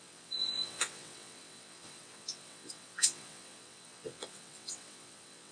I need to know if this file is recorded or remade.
remade